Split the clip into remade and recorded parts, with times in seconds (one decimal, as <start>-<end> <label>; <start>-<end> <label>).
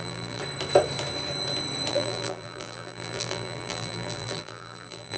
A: 0.0-0.4 remade; 0.4-1.9 recorded; 1.9-5.2 remade